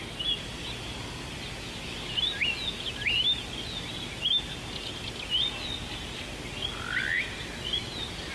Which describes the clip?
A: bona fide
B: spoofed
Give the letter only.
A